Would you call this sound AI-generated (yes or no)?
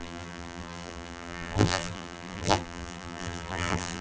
yes